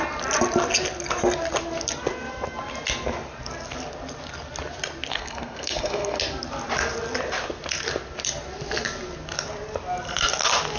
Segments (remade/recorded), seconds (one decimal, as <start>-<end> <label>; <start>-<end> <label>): 0.0-5.1 recorded; 5.1-6.2 remade; 6.2-10.8 recorded